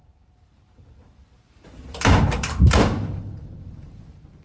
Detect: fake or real fake